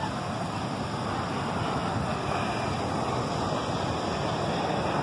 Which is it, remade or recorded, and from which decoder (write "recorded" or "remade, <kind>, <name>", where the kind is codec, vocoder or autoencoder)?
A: recorded